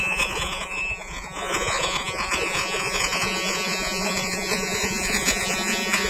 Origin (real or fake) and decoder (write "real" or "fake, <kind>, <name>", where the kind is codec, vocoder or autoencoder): fake, vocoder, Vocos